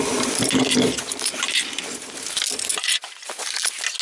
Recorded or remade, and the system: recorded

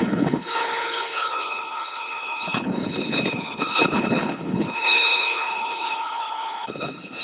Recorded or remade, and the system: remade, codec, HILCodec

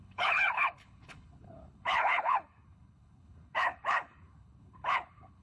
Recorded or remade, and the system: remade, codec, HILCodec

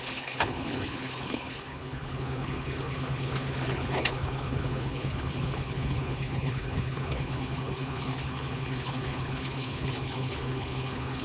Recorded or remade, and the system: remade, codec, HILCodec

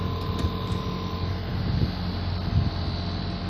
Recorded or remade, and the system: recorded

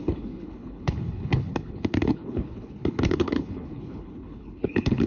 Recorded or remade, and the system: remade, codec, HILCodec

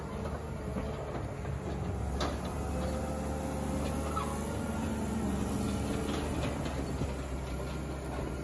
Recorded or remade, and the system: recorded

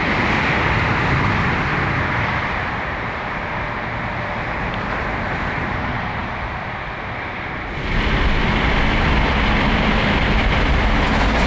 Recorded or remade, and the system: recorded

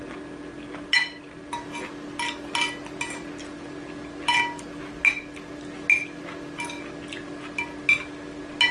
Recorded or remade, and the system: recorded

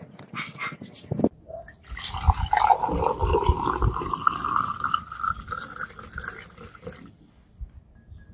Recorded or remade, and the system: recorded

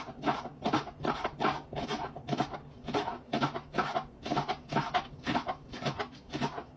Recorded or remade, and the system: recorded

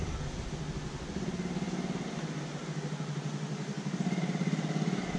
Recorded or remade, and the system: recorded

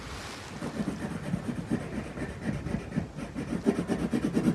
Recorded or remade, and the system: recorded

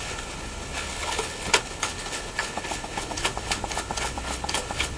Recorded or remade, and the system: remade, codec, HILCodec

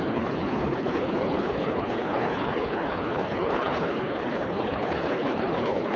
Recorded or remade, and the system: remade, codec, HILCodec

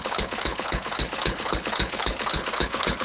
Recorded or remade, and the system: remade, codec, HILCodec